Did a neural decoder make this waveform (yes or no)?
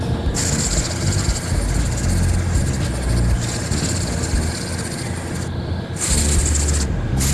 no